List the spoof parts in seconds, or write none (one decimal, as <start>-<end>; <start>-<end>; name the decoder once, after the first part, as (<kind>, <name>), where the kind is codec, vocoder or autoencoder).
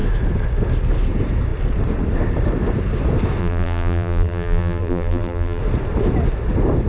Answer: 3.4-5.6 (vocoder, BigVGAN v2)